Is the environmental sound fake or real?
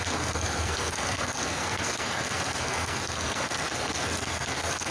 fake